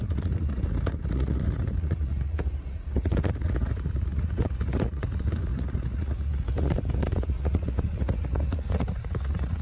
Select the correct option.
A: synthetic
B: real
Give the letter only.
A